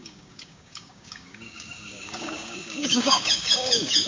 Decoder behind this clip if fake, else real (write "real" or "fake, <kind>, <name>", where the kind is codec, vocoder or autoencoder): fake, codec, DAC